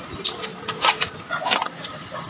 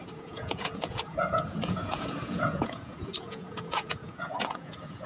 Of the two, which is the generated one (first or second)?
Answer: second